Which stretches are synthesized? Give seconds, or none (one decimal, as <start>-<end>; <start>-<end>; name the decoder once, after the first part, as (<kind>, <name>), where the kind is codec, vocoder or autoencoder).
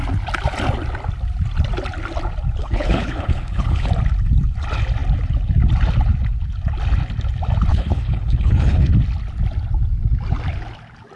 2.6-3.9 (codec, HILCodec); 7.7-8.9